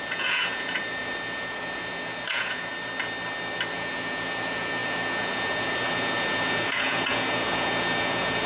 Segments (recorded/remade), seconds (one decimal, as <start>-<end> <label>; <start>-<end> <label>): 0.0-2.7 remade; 2.7-3.7 recorded; 3.7-8.5 remade